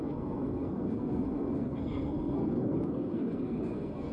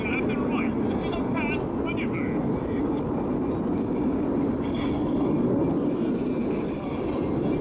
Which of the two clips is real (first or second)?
second